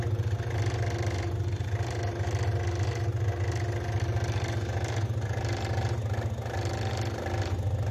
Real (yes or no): yes